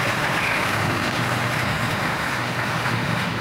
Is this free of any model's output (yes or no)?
no